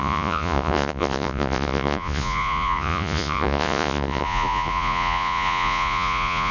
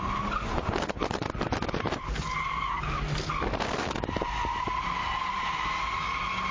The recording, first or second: second